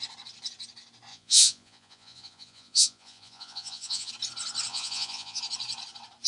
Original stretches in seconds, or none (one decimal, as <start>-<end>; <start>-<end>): 0.0-1.1; 4.1-4.7; 5.4-6.3

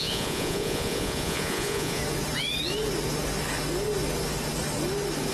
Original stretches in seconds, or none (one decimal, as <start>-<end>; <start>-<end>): 2.0-5.3